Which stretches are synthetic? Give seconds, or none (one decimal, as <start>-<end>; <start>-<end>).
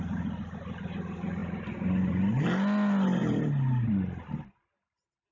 none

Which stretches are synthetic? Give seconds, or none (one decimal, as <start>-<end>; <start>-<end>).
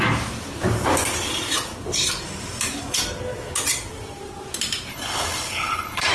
4.9-6.1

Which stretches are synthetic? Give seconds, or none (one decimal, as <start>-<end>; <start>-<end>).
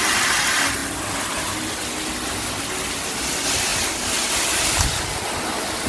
none